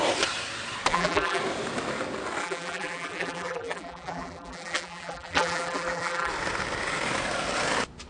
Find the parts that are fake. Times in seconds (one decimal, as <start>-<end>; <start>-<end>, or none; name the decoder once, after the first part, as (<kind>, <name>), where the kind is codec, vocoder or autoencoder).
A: 0.9-1.4 (vocoder, BigVGAN v2); 2.4-6.3

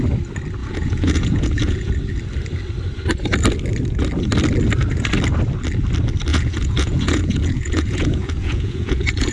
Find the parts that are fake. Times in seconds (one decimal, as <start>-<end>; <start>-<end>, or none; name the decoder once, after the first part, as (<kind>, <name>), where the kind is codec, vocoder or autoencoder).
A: 0.6-1.9 (vocoder, Vocos); 6.3-9.3

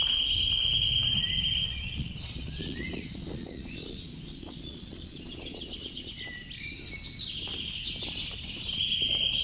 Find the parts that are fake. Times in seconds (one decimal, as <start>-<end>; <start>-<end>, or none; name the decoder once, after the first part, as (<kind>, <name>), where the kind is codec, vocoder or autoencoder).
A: 1.7-6.1 (vocoder, Vocos)

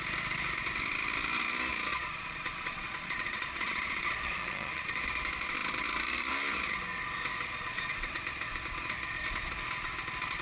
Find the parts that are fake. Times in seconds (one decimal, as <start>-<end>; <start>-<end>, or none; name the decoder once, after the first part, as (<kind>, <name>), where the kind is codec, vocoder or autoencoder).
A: 1.9-4.9 (vocoder, Vocos); 7.5-8.2

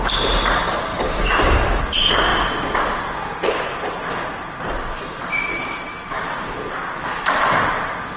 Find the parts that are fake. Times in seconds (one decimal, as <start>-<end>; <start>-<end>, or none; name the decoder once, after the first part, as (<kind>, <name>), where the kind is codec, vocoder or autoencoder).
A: 0.9-1.8 (codec, DAC)